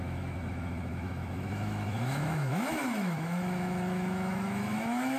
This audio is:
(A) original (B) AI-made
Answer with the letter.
B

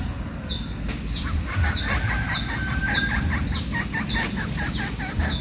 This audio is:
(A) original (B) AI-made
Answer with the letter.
A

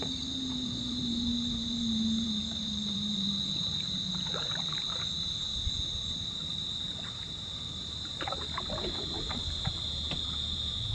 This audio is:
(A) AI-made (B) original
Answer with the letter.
A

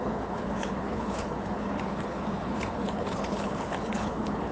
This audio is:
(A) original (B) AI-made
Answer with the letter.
B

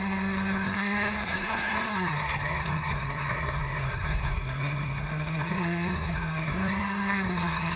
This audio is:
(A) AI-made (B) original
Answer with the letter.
A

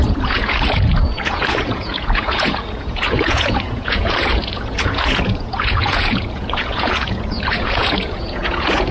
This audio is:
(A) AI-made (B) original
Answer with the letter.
A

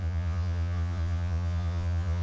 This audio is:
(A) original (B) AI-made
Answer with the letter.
B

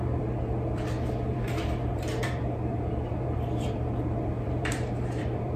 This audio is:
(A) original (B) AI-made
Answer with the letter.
B